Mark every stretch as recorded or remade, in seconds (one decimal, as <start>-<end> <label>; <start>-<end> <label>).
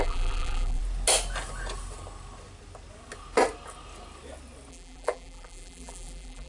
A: 0.0-0.8 remade; 0.8-4.7 recorded; 4.7-6.5 remade